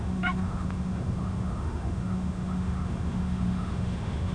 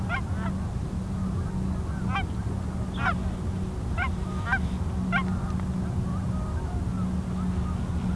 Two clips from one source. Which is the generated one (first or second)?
first